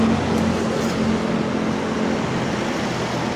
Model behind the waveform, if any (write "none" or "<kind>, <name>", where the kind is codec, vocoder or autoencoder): none